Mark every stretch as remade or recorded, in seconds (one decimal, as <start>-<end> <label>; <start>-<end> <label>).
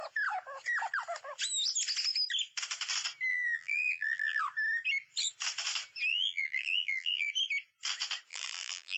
0.0-3.3 recorded; 3.3-4.4 remade; 4.4-6.1 recorded; 6.1-7.3 remade; 7.3-8.3 recorded; 8.3-9.0 remade